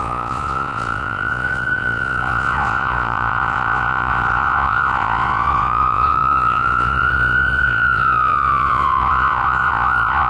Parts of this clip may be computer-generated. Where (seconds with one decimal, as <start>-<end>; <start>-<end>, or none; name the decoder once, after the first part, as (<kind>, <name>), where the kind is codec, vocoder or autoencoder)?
0.0-10.3 (vocoder, Vocos)